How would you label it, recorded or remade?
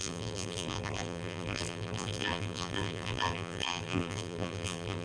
remade